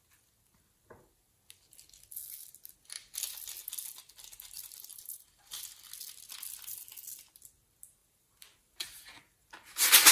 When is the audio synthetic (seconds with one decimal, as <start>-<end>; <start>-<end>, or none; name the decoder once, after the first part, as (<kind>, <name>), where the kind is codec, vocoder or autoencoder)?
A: 4.9-5.6 (vocoder, BigVGAN v2); 8.0-9.5